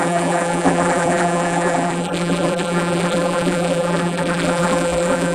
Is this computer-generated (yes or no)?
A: yes